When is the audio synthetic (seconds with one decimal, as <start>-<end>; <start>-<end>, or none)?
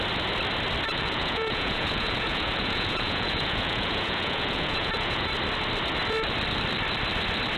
0.9-5.3